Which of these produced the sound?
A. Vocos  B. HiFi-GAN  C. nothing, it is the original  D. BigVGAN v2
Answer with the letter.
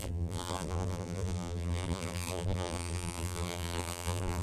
D